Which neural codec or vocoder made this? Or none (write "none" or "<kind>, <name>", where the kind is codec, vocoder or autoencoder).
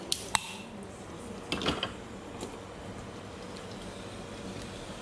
none